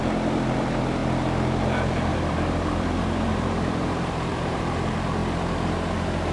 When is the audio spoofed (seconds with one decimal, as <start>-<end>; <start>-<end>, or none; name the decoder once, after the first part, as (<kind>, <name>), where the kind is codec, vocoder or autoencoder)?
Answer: 2.1-4.6 (vocoder, BigVGAN v2)